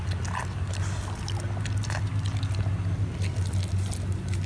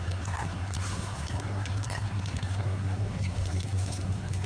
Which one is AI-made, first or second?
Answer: second